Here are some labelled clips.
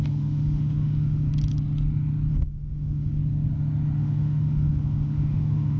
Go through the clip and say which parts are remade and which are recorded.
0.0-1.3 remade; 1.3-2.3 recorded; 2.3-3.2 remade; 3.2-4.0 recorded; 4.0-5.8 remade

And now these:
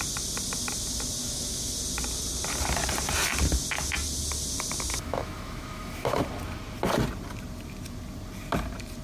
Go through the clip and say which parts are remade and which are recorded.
0.0-1.2 recorded; 1.2-1.7 remade; 1.7-4.9 recorded; 4.9-6.2 remade; 6.2-9.0 recorded

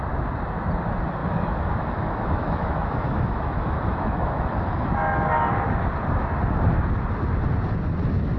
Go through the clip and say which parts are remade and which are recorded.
0.0-1.2 recorded; 1.2-4.9 remade; 4.9-8.4 recorded